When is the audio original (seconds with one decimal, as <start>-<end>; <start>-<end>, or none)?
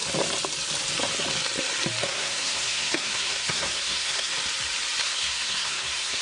0.0-2.0; 4.3-5.0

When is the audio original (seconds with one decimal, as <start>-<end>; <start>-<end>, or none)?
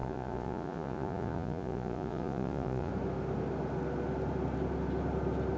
2.9-5.6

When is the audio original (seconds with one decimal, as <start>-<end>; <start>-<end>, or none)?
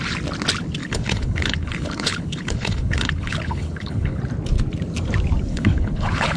0.0-0.8; 4.2-5.5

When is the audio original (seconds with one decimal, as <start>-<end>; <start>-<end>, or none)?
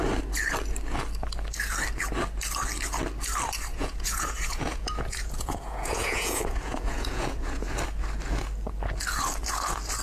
0.0-3.7; 7.7-10.0